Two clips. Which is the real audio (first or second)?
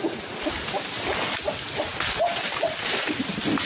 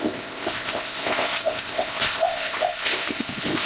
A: first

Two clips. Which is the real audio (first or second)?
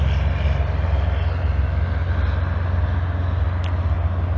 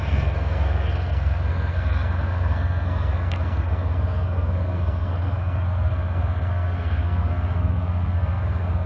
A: first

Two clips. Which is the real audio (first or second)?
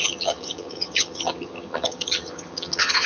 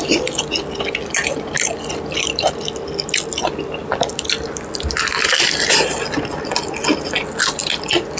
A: second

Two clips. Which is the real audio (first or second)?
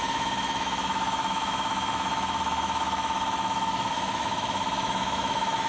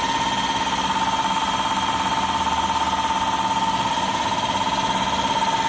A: second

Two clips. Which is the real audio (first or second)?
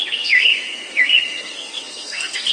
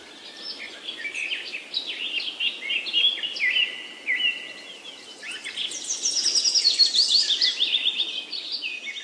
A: second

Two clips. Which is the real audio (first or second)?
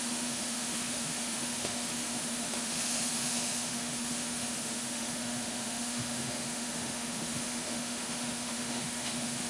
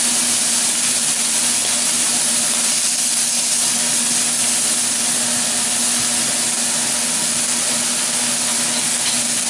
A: second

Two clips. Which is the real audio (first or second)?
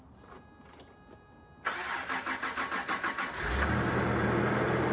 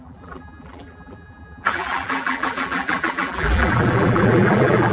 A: first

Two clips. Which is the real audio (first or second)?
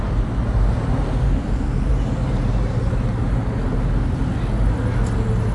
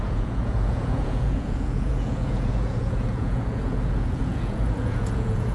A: first